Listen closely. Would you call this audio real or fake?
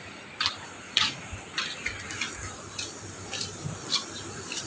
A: real